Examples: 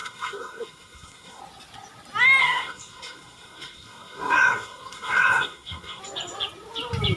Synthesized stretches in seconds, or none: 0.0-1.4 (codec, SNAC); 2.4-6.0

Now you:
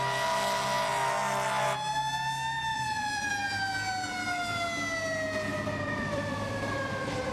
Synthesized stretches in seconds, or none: 2.7-3.3 (vocoder, BigVGAN v2); 5.5-7.3